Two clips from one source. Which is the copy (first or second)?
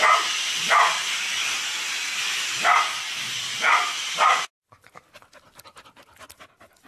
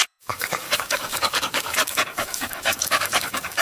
second